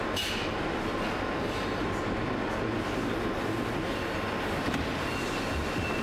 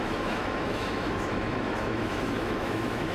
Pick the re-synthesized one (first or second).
second